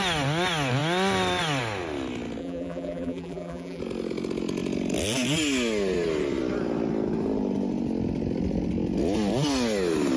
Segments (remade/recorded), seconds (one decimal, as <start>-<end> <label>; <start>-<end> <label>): 0.0-2.4 recorded; 2.4-3.8 remade; 3.8-10.2 recorded